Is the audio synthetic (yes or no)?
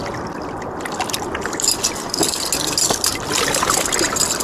no